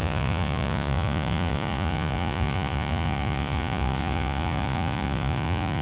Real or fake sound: fake